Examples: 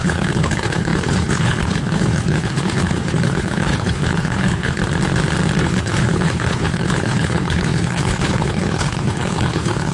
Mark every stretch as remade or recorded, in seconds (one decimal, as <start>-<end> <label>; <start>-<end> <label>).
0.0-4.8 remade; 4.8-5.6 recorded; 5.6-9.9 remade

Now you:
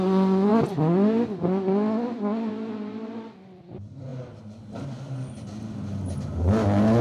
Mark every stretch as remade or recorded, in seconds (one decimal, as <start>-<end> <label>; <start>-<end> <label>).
0.0-7.0 recorded

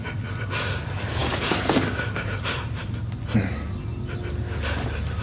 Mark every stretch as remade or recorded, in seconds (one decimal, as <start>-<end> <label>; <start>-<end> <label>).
0.0-5.2 recorded

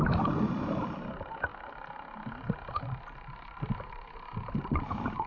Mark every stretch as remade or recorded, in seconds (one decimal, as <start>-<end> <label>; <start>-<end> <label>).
0.0-5.3 recorded

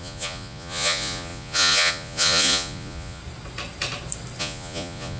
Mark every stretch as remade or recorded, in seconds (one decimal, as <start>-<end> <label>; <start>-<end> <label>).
0.0-3.2 remade; 3.2-4.4 recorded; 4.4-5.2 remade

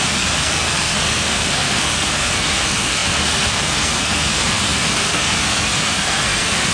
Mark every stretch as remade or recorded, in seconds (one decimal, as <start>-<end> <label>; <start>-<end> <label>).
0.0-6.7 remade